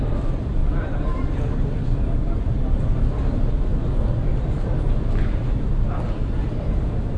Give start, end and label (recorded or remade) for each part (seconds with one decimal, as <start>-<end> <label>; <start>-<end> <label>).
0.0-7.2 recorded